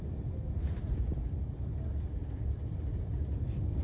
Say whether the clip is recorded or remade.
recorded